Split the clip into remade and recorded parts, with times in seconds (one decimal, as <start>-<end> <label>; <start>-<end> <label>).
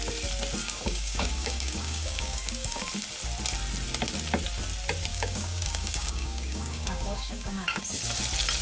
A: 0.0-0.6 recorded; 0.6-2.9 remade; 2.9-5.1 recorded; 5.1-7.8 remade; 7.8-8.6 recorded